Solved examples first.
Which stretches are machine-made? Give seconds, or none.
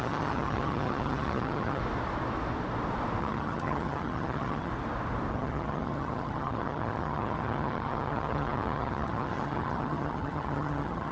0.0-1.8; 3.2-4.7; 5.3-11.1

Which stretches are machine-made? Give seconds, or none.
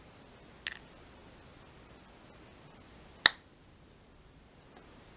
none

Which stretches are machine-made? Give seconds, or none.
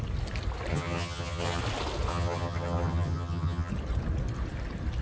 0.7-1.6; 2.1-3.7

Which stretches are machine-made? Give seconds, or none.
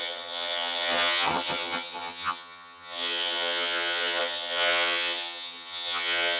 0.0-6.4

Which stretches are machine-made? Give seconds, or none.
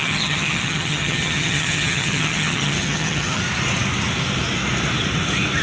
0.0-3.4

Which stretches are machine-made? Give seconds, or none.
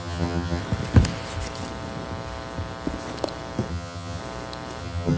0.0-0.6; 3.7-4.2; 4.8-5.2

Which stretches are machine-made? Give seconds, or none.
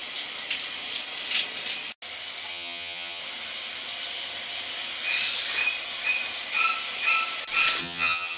2.5-3.2; 7.8-8.4